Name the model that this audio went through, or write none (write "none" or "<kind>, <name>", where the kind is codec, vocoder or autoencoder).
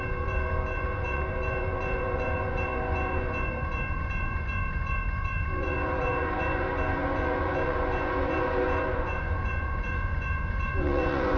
vocoder, Vocos